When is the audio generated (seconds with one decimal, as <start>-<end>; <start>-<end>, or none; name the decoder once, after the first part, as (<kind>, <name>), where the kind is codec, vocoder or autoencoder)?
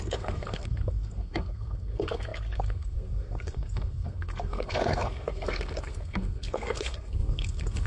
0.0-7.9 (codec, SNAC)